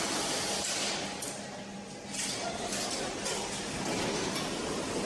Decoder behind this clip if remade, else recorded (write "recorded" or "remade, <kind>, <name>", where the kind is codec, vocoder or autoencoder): recorded